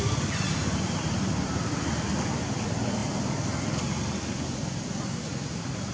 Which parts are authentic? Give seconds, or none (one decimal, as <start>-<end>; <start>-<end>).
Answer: 0.0-5.9